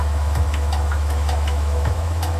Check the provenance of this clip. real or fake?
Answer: fake